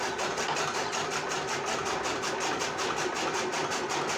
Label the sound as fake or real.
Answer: real